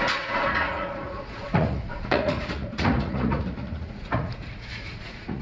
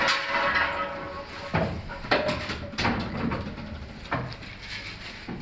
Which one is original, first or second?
second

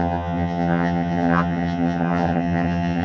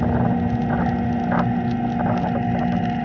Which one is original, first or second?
second